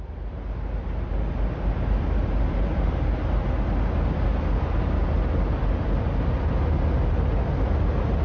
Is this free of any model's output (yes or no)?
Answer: yes